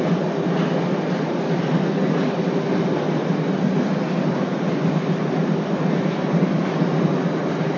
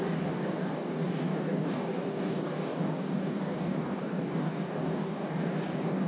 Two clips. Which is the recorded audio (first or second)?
first